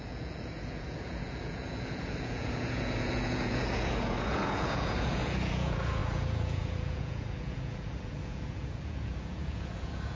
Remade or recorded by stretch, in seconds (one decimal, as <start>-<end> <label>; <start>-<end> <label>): 0.0-10.2 remade